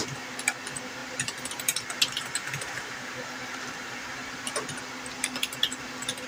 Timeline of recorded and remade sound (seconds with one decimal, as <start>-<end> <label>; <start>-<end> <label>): 0.0-1.0 recorded; 1.0-4.8 remade; 4.8-6.3 recorded